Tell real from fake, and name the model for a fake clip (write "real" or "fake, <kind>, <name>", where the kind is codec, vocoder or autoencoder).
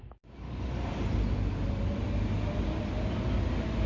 real